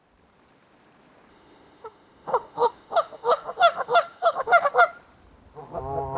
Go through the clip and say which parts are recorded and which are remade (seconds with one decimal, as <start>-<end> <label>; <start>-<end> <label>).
0.0-1.3 recorded; 1.3-4.7 remade; 4.7-6.2 recorded